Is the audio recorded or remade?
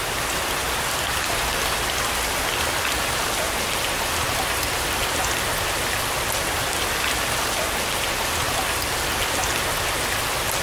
recorded